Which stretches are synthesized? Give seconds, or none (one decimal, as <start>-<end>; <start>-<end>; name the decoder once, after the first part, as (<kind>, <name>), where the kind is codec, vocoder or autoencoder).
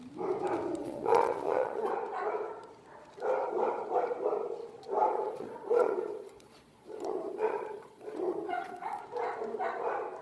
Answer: 0.8-1.9 (vocoder, Vocos); 5.1-9.0